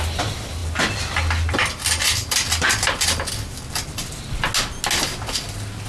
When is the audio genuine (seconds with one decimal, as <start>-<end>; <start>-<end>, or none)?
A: 0.0-5.9